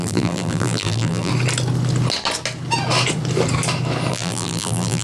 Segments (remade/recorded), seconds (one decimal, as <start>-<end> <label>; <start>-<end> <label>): 0.0-1.3 remade; 1.3-4.1 recorded; 4.1-5.0 remade